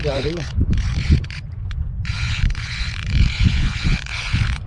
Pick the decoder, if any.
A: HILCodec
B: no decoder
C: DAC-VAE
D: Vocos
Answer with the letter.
D